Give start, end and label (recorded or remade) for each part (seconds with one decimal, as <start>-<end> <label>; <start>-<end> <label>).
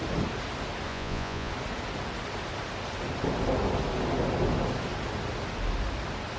0.0-0.9 recorded; 0.9-1.5 remade; 1.5-6.4 recorded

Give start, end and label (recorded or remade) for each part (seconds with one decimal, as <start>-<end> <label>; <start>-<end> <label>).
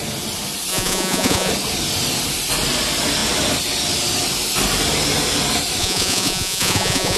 0.0-0.7 recorded; 0.7-1.5 remade; 1.5-5.8 recorded; 5.8-7.2 remade